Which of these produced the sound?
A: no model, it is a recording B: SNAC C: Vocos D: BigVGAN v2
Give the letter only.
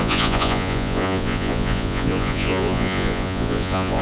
C